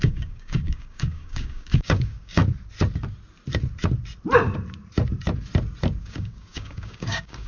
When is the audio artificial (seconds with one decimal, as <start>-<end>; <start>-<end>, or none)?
0.0-2.4; 6.0-7.5